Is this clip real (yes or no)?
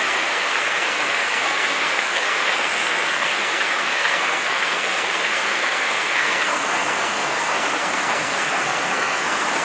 no